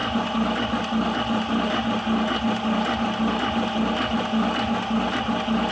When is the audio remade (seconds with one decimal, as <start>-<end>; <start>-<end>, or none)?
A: none